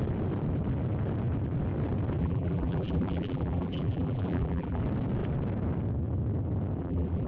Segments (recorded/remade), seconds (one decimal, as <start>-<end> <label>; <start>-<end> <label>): 0.0-2.2 recorded; 2.2-4.8 remade; 4.8-6.8 recorded; 6.8-7.3 remade